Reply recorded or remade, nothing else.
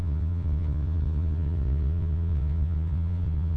remade